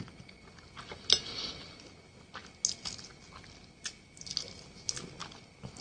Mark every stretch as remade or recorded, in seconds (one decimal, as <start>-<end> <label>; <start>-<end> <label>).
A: 0.0-5.8 recorded